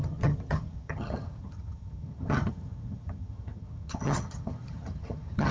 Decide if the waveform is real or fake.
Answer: fake